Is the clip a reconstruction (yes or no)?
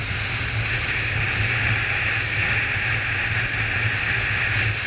no